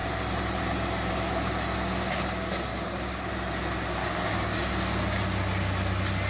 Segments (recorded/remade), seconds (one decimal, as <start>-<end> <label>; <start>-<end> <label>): 0.0-2.7 recorded; 2.7-3.3 remade; 3.3-4.0 recorded; 4.0-4.7 remade; 4.7-6.3 recorded